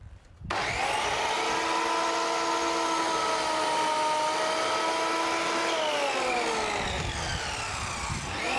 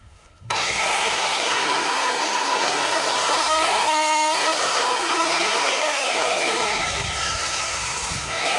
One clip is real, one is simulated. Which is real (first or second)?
first